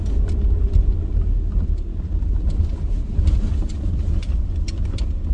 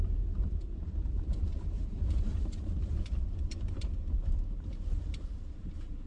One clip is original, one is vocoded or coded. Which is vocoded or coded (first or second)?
second